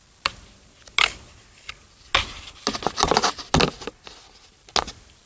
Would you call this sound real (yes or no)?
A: yes